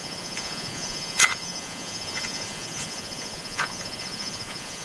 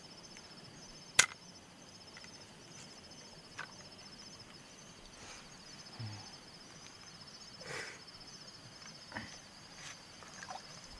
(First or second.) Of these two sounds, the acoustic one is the second